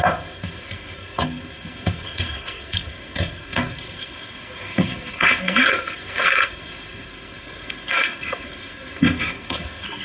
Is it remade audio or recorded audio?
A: remade